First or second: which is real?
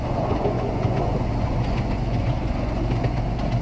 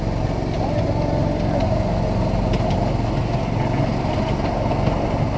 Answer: second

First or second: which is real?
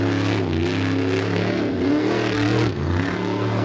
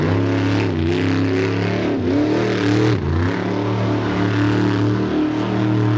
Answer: second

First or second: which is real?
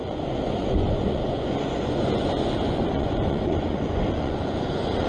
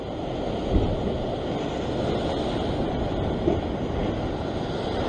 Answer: second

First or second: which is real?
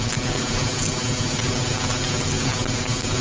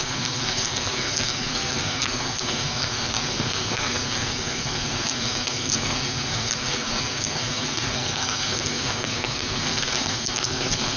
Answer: first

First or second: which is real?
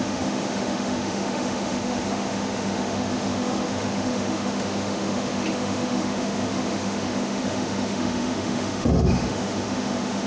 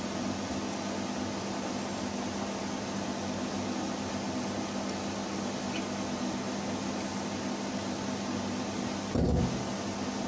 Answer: second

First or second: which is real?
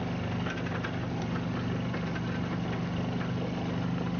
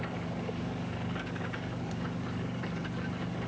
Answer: first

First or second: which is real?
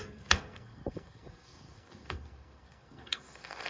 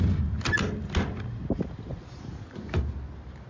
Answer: second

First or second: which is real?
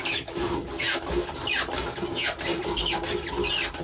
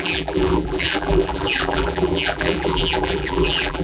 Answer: first